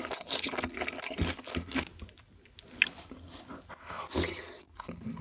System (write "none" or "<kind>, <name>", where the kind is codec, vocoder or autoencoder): none